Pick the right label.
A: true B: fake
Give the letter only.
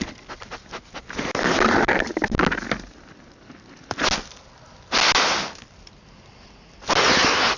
A